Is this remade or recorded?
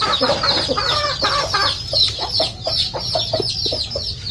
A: recorded